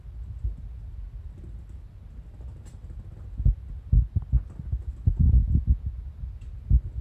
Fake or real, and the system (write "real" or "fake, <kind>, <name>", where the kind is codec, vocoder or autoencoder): real